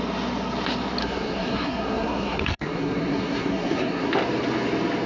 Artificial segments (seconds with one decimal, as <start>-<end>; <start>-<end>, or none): 1.0-4.1